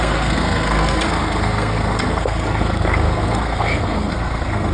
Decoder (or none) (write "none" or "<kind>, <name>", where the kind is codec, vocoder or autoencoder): codec, SNAC